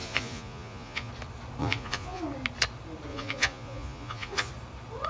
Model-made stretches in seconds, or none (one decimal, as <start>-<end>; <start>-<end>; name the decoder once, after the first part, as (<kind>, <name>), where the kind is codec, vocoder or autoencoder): 0.0-1.1 (vocoder, Vocos); 1.6-2.2; 3.1-4.5